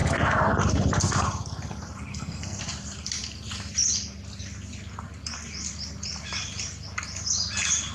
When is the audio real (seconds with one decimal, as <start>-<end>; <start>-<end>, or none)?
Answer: 0.0-2.1; 2.6-7.9

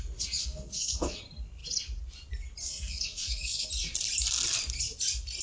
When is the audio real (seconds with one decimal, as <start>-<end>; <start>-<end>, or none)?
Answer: 0.0-0.4; 1.2-2.6; 3.7-5.4

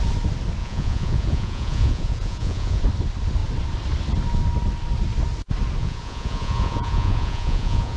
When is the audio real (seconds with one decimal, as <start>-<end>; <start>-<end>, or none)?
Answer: 0.0-0.6; 2.8-5.8

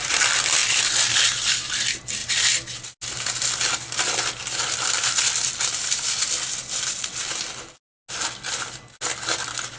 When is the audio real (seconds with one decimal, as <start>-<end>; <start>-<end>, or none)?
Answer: 0.0-9.8

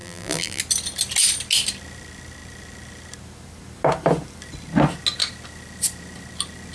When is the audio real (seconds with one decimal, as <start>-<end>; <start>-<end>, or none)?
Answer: 0.6-6.7